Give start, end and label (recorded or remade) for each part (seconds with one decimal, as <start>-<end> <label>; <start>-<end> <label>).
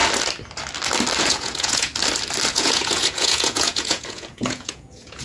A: 0.0-1.2 recorded; 1.2-1.9 remade; 1.9-2.5 recorded; 2.5-5.2 remade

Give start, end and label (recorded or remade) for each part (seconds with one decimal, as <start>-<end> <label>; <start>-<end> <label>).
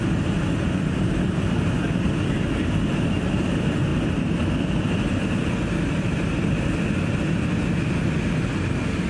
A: 0.0-9.1 recorded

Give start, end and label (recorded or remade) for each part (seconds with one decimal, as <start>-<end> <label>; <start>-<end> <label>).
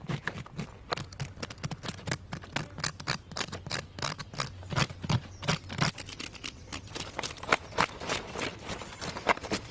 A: 0.0-9.7 recorded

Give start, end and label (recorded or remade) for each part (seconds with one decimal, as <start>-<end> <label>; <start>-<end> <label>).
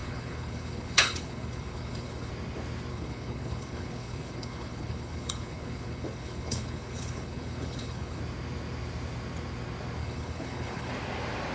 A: 0.0-2.3 remade; 2.3-2.9 recorded; 2.9-8.2 remade; 8.2-10.0 recorded; 10.0-10.9 remade; 10.9-11.5 recorded